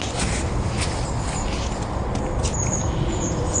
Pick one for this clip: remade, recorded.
recorded